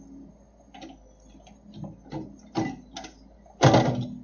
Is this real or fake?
real